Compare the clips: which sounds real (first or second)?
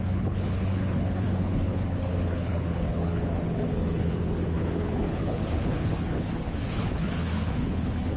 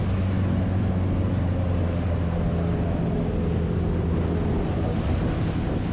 second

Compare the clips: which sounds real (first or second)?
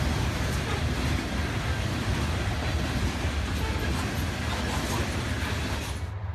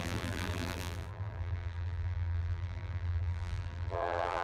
first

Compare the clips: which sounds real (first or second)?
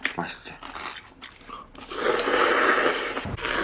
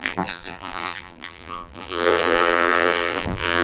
first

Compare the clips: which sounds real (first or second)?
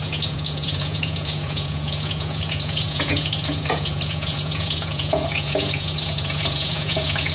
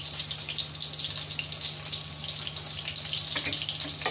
second